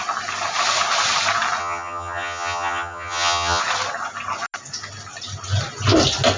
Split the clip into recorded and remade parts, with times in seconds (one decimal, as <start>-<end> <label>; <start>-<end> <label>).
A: 0.0-1.6 recorded; 1.6-3.6 remade; 3.6-6.4 recorded